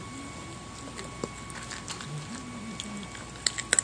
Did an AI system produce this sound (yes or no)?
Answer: no